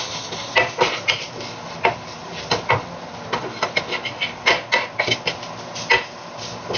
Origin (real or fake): real